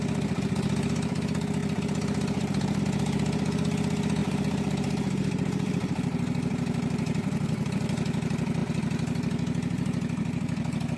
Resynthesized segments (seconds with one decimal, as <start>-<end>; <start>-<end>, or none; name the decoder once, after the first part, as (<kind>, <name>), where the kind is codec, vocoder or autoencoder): 1.6-2.8 (vocoder, BigVGAN v2); 4.2-7.7